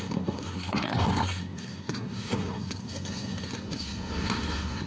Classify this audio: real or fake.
fake